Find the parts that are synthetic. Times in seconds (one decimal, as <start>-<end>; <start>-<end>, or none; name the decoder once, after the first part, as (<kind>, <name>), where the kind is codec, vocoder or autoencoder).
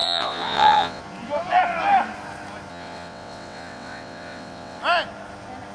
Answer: 0.0-1.0 (vocoder, WaveNeXt); 2.7-4.8